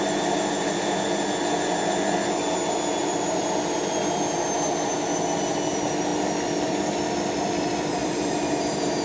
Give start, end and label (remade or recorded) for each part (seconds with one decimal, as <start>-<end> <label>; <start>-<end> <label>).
0.0-8.0 recorded; 8.0-9.0 remade